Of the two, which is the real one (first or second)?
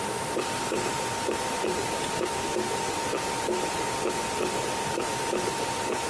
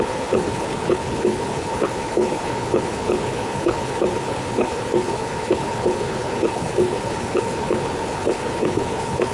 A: first